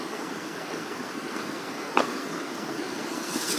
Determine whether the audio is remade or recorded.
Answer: remade